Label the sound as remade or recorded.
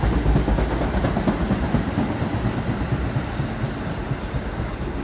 recorded